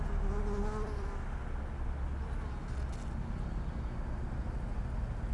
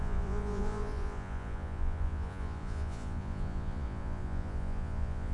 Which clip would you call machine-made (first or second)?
second